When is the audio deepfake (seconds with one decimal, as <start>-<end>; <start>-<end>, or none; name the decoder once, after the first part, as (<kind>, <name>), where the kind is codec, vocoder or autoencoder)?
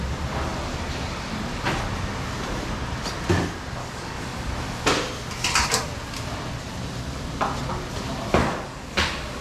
3.8-4.5 (codec, DAC); 8.4-9.4